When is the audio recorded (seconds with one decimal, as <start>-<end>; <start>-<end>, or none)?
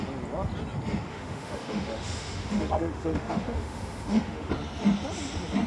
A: 0.0-1.1; 4.5-5.7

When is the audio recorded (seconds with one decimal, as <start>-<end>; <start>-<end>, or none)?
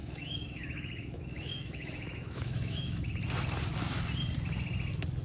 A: 3.1-5.2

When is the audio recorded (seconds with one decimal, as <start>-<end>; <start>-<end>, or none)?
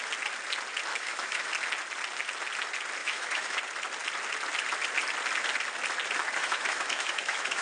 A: 0.0-0.9; 1.5-3.0; 3.6-6.4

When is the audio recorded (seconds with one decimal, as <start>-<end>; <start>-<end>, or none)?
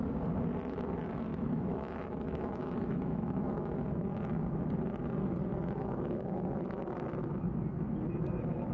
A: 0.0-1.3; 3.7-5.5; 6.8-8.7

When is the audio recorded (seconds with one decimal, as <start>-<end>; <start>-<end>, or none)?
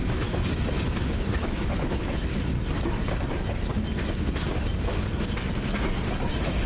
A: 2.3-6.3